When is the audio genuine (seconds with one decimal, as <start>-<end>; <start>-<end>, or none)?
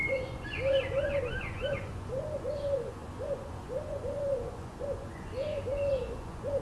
none